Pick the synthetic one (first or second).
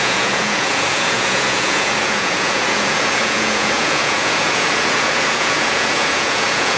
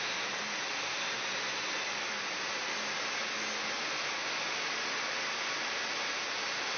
first